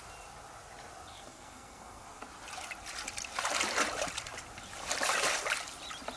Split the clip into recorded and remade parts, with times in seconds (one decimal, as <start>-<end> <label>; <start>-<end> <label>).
0.0-1.1 recorded; 1.1-2.2 remade; 2.2-6.2 recorded

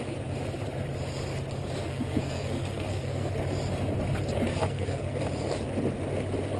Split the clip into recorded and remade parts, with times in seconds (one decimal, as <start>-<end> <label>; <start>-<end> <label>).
0.0-1.8 recorded; 1.8-3.3 remade; 3.3-4.5 recorded; 4.5-5.2 remade; 5.2-6.6 recorded

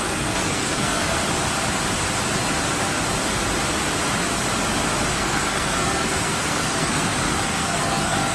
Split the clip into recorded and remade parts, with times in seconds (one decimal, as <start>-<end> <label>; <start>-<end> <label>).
0.0-1.2 remade; 1.2-5.1 recorded; 5.1-8.3 remade

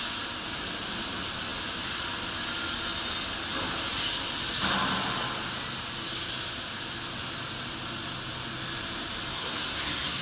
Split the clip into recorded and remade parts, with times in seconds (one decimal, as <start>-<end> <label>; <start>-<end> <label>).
0.0-9.3 recorded; 9.3-10.2 remade

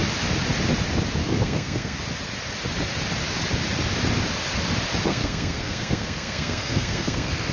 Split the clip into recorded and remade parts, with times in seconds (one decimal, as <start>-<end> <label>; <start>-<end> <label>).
0.0-1.2 recorded; 1.2-2.0 remade; 2.0-5.1 recorded; 5.1-7.5 remade